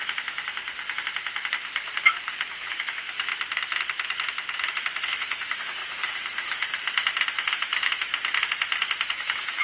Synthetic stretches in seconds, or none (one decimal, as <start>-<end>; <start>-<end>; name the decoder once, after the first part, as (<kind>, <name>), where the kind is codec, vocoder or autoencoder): 2.5-3.3 (autoencoder, DAC-VAE); 5.0-5.8; 7.5-8.1; 9.1-9.6